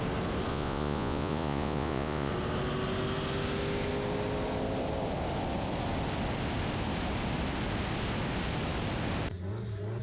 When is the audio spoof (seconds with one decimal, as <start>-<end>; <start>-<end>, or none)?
0.5-2.3